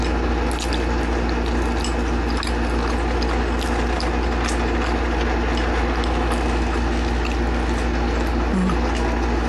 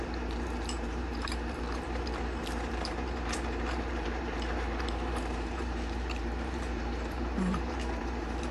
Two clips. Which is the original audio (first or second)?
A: first